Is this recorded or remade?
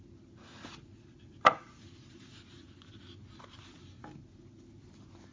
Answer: recorded